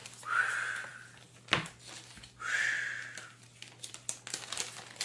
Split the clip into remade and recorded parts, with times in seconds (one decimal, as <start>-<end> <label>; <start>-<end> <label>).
0.0-5.0 recorded